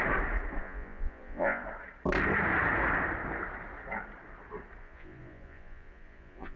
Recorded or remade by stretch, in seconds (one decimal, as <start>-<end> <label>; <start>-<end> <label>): 0.0-0.6 recorded; 0.6-1.6 remade; 1.6-4.8 recorded; 4.8-6.6 remade